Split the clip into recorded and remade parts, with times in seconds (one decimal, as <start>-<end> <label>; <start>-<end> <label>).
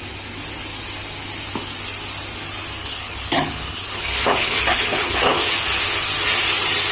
0.0-2.8 recorded; 2.8-5.6 remade; 5.6-6.9 recorded